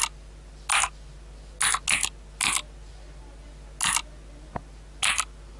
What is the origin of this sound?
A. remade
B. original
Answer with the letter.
B